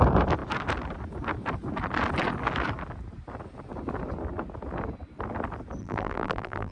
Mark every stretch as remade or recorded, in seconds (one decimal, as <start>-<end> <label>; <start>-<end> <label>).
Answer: 0.0-5.8 recorded; 5.8-6.7 remade

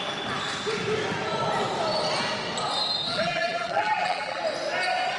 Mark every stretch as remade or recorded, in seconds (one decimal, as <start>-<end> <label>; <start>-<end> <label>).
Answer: 0.0-3.1 recorded; 3.1-4.4 remade; 4.4-5.2 recorded

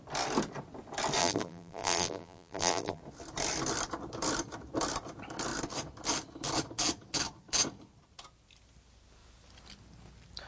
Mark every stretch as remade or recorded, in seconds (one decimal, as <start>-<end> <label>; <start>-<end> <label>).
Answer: 0.0-1.2 recorded; 1.2-3.0 remade; 3.0-10.5 recorded

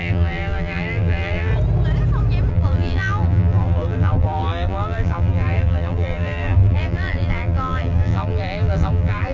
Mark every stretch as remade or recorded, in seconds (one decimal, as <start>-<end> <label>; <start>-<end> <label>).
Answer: 0.0-1.5 remade; 1.5-2.5 recorded; 2.5-9.3 remade

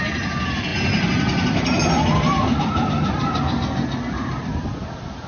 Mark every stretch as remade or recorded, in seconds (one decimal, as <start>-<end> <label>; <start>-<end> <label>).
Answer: 0.0-5.3 recorded

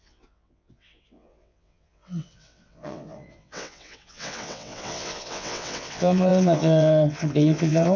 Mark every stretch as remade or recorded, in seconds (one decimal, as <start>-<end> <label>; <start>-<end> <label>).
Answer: 0.0-8.0 remade

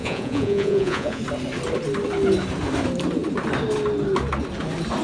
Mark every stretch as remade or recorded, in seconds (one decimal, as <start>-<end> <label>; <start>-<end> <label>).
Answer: 0.0-1.2 remade; 1.2-5.0 recorded